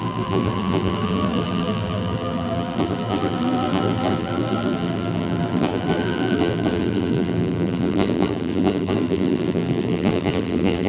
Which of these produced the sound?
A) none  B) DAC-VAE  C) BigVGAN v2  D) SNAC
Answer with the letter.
C